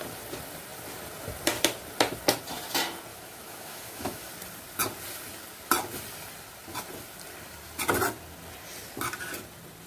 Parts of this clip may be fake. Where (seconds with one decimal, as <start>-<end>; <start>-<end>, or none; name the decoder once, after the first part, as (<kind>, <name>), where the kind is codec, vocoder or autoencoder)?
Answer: 3.1-4.3 (autoencoder, DAC-VAE)